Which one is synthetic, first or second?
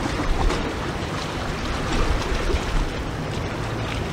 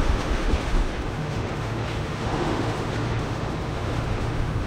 second